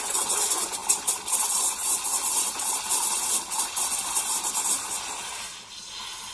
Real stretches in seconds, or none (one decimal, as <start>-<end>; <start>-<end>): 0.8-1.6; 2.1-6.3